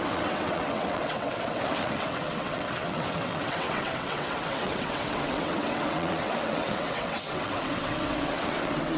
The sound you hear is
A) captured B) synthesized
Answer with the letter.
B